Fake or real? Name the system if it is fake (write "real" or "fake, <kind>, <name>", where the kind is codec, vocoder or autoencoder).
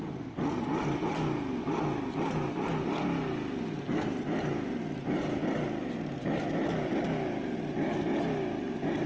real